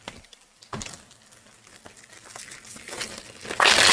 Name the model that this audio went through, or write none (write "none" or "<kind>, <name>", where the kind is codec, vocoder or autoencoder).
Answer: none